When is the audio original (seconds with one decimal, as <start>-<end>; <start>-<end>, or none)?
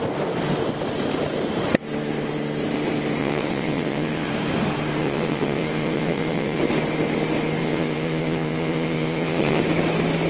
0.0-3.2; 4.3-5.0; 6.6-7.6; 9.6-10.3